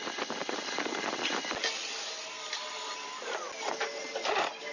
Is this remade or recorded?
recorded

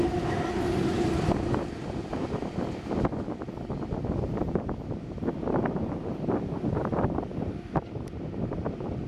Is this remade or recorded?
recorded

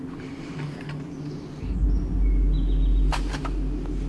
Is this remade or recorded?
recorded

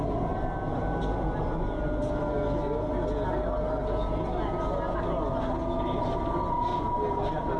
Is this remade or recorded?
recorded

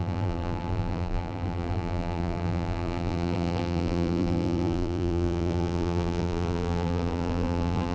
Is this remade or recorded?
remade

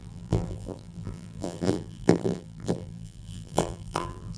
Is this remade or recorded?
remade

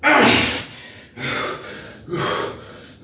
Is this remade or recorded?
recorded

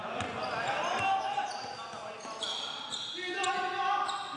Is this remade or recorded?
recorded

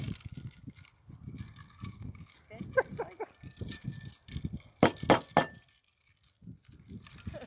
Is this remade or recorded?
recorded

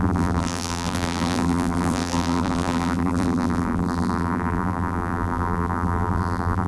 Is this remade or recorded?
remade